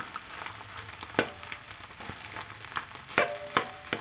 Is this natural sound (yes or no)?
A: yes